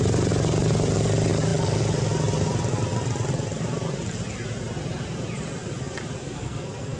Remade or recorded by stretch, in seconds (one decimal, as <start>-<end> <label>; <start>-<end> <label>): 0.0-6.2 recorded; 6.2-7.0 remade